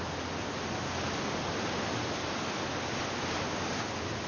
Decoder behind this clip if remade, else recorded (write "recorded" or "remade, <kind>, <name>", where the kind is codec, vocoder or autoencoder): recorded